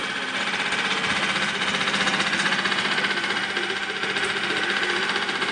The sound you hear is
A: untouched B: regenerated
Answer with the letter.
A